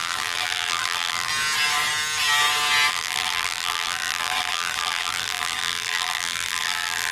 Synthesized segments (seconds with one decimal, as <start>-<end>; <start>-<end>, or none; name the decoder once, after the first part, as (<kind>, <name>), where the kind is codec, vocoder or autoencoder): 0.0-1.3 (vocoder, BigVGAN v2); 2.9-7.1